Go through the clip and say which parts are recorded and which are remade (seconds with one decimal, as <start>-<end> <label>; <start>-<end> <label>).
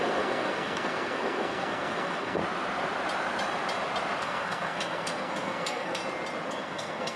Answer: 0.0-2.4 remade; 2.4-4.2 recorded; 4.2-6.0 remade; 6.0-6.5 recorded; 6.5-7.2 remade